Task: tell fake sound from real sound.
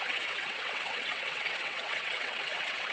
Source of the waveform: fake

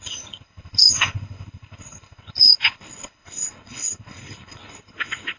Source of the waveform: fake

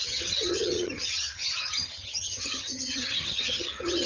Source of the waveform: fake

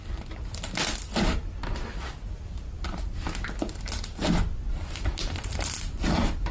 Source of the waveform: fake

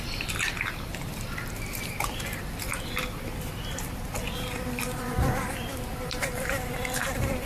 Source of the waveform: fake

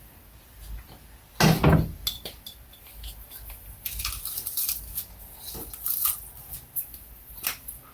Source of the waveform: real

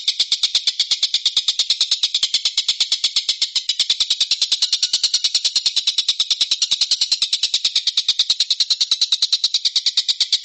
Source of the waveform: real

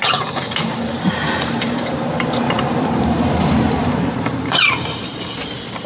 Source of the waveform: fake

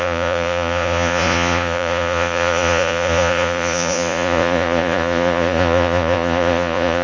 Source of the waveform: fake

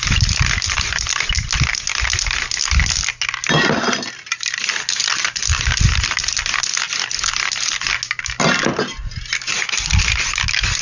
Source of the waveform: real